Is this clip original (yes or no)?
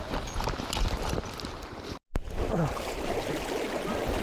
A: yes